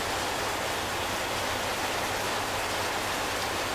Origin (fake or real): real